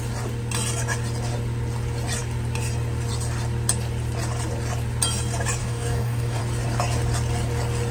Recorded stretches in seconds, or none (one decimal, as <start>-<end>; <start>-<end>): 0.0-5.6; 6.4-7.9